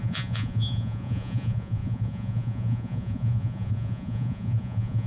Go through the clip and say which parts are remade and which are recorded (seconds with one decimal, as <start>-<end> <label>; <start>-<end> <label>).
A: 0.0-5.1 remade